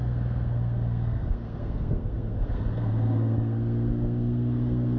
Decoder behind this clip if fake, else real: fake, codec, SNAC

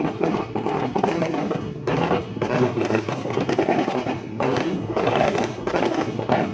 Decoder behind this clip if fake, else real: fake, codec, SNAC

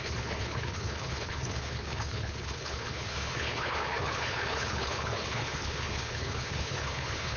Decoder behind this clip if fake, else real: fake, codec, HILCodec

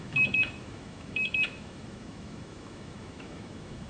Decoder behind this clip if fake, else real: fake, autoencoder, DAC-VAE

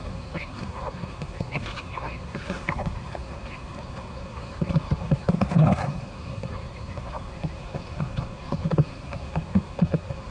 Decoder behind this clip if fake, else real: fake, codec, SNAC